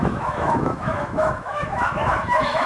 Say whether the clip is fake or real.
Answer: fake